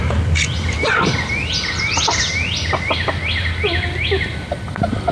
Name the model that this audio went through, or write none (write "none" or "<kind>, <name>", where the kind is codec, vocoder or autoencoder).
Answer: none